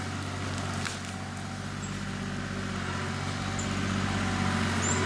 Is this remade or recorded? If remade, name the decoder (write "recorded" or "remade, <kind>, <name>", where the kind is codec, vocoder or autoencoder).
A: recorded